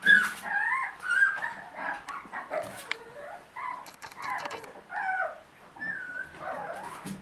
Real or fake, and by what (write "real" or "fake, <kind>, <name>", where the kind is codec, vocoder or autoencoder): real